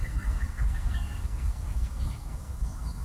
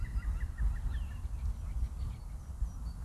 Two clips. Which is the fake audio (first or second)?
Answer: first